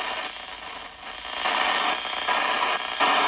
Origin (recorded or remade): recorded